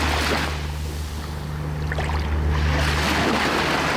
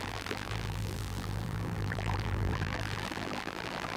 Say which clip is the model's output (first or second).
second